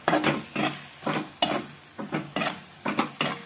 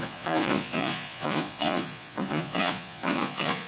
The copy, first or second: second